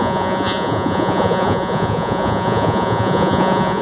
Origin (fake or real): fake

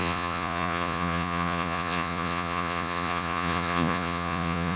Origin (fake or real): fake